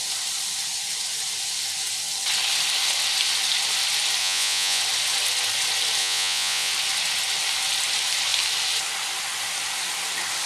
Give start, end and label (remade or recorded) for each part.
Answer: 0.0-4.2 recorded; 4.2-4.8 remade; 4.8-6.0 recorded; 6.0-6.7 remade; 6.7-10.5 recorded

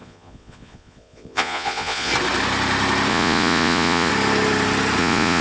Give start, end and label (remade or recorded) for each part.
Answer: 0.0-2.1 remade; 2.1-3.1 recorded; 3.1-4.1 remade; 4.1-5.0 recorded; 5.0-5.4 remade

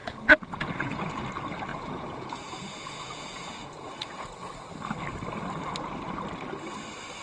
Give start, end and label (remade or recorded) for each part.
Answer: 0.0-1.2 remade; 1.2-1.7 recorded; 1.7-4.4 remade; 4.4-7.2 recorded